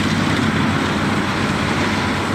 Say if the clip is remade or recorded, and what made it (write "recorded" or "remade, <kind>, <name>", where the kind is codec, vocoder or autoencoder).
recorded